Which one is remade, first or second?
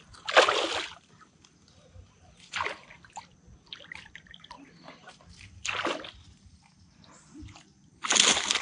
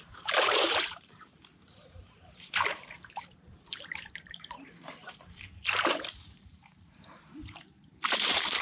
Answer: second